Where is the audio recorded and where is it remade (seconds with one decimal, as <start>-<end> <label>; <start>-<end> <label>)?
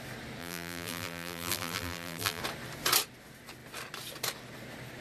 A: 0.0-0.4 recorded; 0.4-2.4 remade; 2.4-5.0 recorded